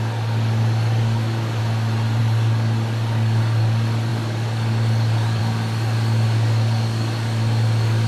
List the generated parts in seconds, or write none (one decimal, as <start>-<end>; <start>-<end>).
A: 0.0-1.6; 2.2-8.1